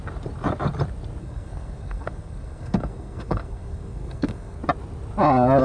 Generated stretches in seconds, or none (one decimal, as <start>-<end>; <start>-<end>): 1.2-4.6

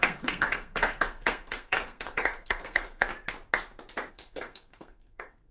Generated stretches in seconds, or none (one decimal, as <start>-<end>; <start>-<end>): 0.0-3.1; 4.1-5.5